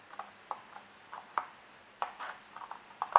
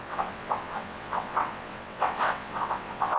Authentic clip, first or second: first